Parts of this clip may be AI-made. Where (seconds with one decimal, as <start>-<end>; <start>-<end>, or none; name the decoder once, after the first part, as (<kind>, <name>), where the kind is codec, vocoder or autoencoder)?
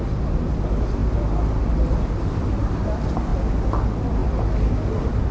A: none